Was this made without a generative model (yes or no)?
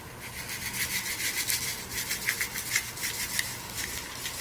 yes